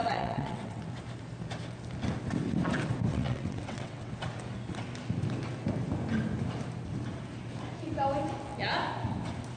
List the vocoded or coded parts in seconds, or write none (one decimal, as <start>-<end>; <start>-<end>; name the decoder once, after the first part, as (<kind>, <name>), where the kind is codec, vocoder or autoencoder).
0.0-0.8 (vocoder, WaveNeXt); 3.1-4.1

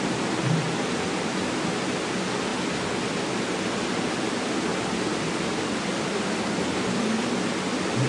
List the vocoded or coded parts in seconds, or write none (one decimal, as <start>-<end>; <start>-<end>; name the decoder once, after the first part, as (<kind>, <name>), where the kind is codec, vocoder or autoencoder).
none

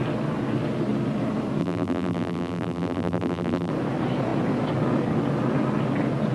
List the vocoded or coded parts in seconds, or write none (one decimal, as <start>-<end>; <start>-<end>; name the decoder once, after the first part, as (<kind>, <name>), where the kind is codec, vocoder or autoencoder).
1.6-3.7 (vocoder, BigVGAN v2)

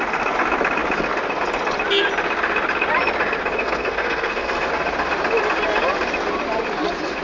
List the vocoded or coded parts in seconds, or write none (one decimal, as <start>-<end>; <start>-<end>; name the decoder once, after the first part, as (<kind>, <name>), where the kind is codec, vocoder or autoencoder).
3.6-4.7 (codec, SNAC)

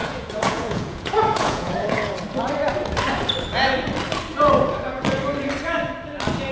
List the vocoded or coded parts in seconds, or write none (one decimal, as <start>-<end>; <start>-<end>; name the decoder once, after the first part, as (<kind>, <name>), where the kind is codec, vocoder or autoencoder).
0.0-2.1 (vocoder, Vocos)

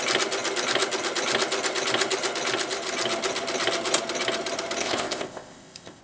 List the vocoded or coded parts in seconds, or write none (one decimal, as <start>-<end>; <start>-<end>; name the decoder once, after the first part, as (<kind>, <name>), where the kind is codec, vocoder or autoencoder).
4.8-6.0 (codec, ZipCodec)

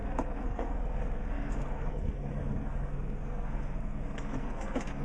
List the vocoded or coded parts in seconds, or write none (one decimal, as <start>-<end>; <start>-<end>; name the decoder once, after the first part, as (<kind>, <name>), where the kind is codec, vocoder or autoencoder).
0.0-5.0 (codec, SNAC)

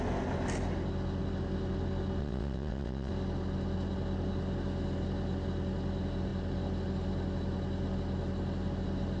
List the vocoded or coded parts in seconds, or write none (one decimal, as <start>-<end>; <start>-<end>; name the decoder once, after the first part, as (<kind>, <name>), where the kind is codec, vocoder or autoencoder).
2.2-3.1 (vocoder, WaveNeXt)